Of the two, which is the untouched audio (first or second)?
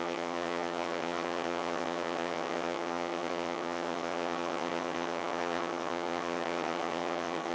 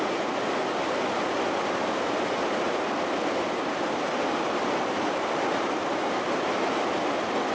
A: second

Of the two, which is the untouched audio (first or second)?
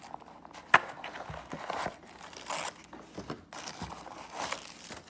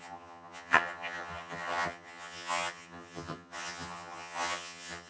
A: first